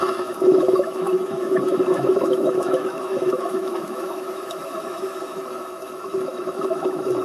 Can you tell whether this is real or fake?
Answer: fake